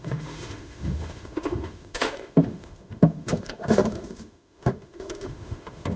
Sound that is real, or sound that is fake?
fake